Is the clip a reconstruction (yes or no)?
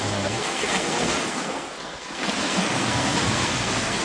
yes